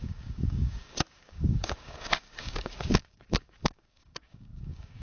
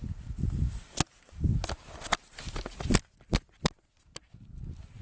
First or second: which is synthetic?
first